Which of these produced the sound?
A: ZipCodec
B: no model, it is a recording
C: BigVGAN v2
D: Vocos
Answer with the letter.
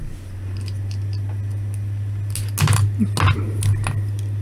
B